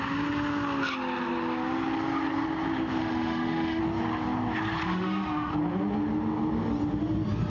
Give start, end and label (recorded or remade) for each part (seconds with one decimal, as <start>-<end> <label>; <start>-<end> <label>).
0.0-3.0 recorded; 3.0-3.8 remade; 3.8-4.8 recorded; 4.8-5.5 remade; 5.5-7.5 recorded